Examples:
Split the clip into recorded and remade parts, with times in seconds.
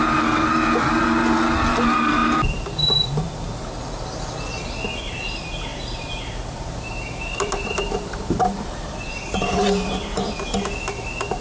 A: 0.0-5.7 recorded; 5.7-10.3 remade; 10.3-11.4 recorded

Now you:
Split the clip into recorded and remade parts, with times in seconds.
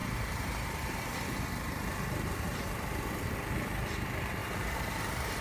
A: 0.0-3.2 remade; 3.2-4.4 recorded; 4.4-5.0 remade; 5.0-5.4 recorded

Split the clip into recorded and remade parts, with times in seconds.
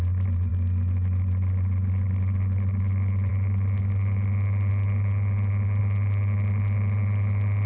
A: 0.0-7.7 recorded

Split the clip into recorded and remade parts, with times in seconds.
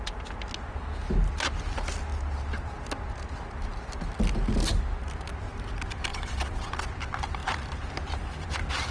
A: 0.0-6.1 recorded; 6.1-6.7 remade; 6.7-8.9 recorded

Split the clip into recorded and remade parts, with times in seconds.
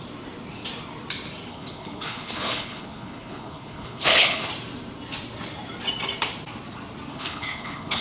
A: 0.0-1.5 recorded; 1.5-4.5 remade; 4.5-7.1 recorded; 7.1-8.0 remade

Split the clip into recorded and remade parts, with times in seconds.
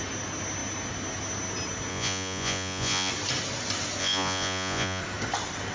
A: 0.0-1.9 recorded; 1.9-3.1 remade; 3.1-4.0 recorded; 4.0-5.0 remade; 5.0-5.7 recorded